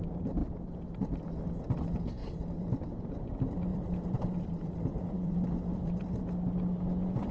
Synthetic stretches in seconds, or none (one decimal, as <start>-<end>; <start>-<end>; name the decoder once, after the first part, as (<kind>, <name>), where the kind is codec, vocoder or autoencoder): 0.4-1.3 (vocoder, BigVGAN v2); 2.2-3.2; 3.7-6.2